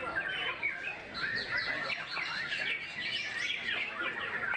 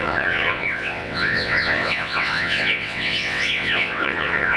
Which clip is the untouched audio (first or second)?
first